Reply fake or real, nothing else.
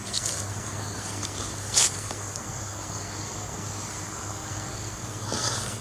fake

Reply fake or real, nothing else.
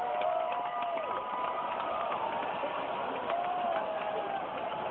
real